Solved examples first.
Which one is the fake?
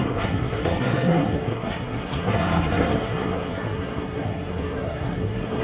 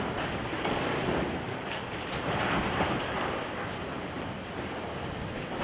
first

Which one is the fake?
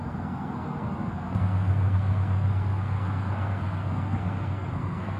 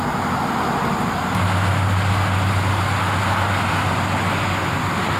first